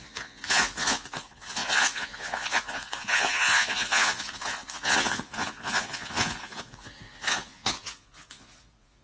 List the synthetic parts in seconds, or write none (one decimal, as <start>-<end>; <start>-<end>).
0.0-9.0